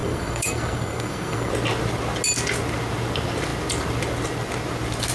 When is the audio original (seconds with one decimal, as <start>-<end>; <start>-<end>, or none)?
1.5-5.1